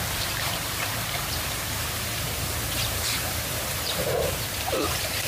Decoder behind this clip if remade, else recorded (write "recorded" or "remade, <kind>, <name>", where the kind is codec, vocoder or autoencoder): remade, vocoder, BigVGAN v2